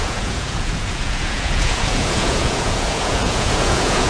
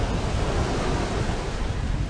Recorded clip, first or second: second